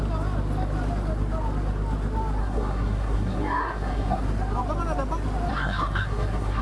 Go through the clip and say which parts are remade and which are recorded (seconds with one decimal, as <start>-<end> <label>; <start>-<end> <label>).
0.0-2.4 recorded; 2.4-4.2 remade; 4.2-5.5 recorded; 5.5-6.6 remade